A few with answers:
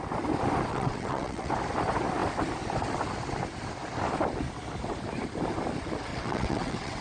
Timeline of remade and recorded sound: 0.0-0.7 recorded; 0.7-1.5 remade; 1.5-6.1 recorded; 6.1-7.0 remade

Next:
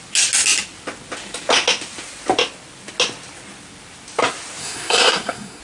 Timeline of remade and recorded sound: 0.0-4.6 recorded; 4.6-5.6 remade

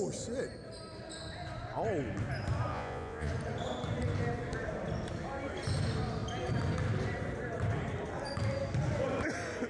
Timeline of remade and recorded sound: 0.0-2.7 recorded; 2.7-3.3 remade; 3.3-9.7 recorded

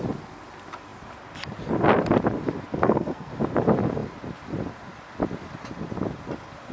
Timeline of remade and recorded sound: 0.0-2.8 recorded; 2.8-3.3 remade; 3.3-6.7 recorded

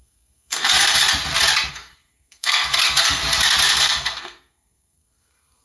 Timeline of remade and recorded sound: 0.0-1.0 remade; 1.0-1.7 recorded; 1.7-3.2 remade; 3.2-3.7 recorded; 3.7-5.6 remade

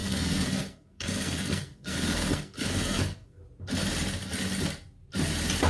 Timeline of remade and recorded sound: 0.0-3.4 remade; 3.4-5.7 recorded